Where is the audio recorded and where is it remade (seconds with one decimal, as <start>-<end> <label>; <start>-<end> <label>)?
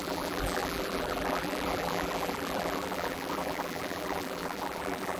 0.0-5.2 remade